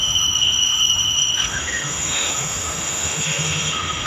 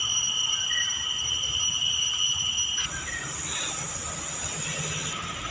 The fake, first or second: first